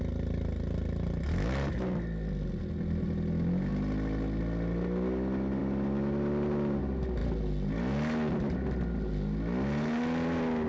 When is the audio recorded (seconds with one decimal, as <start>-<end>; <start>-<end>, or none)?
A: 0.0-10.7